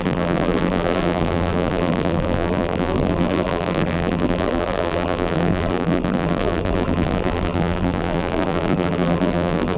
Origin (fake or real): fake